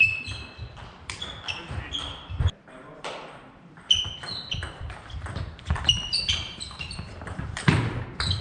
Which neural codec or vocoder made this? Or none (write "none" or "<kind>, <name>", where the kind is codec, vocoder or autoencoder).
vocoder, BigVGAN v2